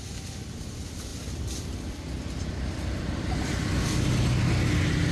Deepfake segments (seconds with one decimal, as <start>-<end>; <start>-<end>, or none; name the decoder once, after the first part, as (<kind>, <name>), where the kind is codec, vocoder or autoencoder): none